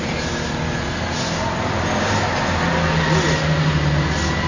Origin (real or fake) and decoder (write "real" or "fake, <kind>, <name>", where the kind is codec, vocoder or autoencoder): real